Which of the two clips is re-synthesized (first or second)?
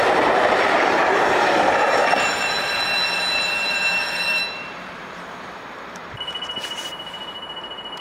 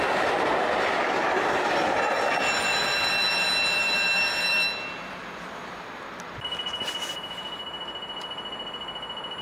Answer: first